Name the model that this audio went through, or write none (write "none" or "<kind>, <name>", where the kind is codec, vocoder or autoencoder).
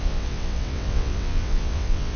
vocoder, WaveNeXt